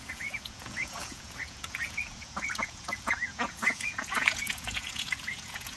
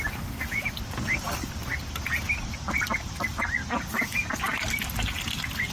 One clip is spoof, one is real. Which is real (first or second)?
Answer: second